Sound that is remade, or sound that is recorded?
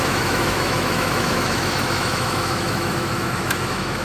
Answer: remade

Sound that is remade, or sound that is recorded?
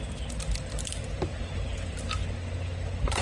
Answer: recorded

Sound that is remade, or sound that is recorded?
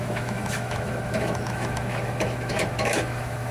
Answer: remade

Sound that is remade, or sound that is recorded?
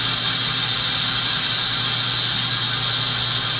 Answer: recorded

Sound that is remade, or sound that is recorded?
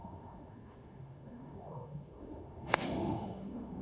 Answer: remade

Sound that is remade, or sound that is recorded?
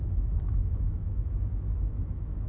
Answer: remade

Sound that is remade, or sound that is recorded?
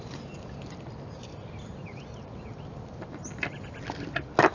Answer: recorded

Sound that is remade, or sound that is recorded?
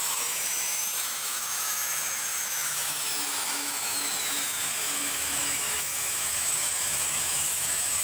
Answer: remade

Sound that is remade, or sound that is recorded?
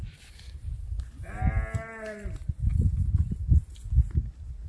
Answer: recorded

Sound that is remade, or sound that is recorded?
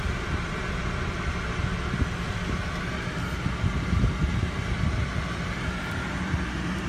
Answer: recorded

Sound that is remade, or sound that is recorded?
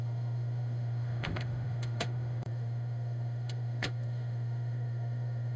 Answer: remade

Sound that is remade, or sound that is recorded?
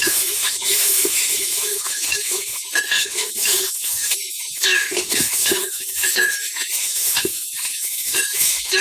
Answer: remade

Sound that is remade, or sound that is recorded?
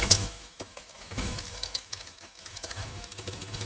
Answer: remade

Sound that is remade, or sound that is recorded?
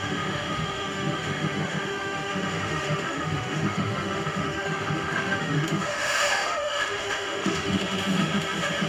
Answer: remade